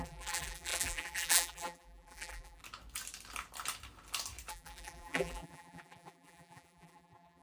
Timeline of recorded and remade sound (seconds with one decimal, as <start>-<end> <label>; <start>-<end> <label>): 0.0-2.6 remade; 2.6-4.5 recorded; 4.5-7.4 remade